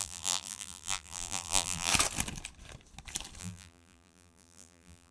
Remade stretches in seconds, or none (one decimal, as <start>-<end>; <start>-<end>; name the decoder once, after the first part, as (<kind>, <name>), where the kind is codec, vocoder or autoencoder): 0.0-1.9 (vocoder, BigVGAN v2); 3.4-5.1